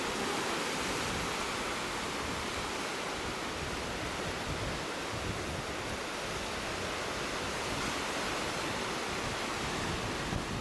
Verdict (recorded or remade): recorded